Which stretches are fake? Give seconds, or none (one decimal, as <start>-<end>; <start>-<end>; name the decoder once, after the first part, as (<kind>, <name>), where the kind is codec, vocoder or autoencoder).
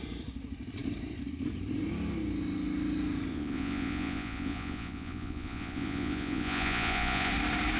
3.3-7.3 (vocoder, Vocos)